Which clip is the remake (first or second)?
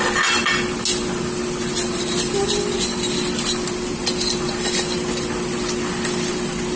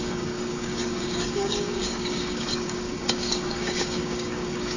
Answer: second